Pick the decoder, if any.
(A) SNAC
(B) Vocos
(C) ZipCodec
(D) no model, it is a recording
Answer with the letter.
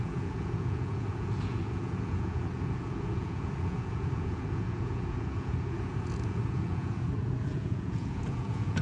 B